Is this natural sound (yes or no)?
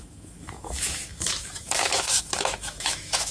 no